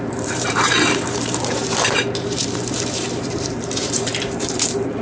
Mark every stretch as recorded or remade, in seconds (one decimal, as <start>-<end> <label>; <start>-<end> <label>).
0.0-5.0 remade